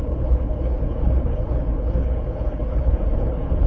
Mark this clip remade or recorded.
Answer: remade